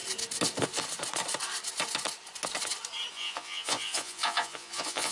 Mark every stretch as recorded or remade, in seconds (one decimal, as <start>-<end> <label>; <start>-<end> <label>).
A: 0.0-3.1 recorded; 3.1-5.1 remade